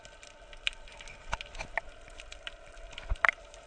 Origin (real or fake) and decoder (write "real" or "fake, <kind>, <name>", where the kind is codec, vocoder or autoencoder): real